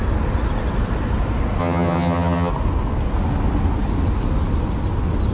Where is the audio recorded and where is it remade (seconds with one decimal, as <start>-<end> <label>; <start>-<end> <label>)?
0.0-1.6 recorded; 1.6-2.5 remade; 2.5-5.3 recorded